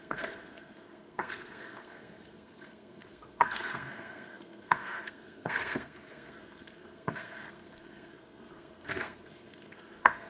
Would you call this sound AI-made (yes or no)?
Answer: yes